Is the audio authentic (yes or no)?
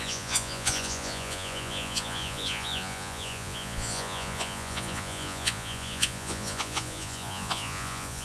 no